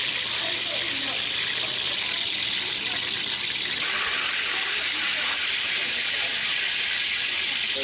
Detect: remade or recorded recorded